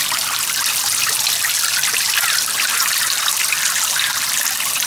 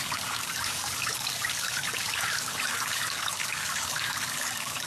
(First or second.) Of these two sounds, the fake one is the second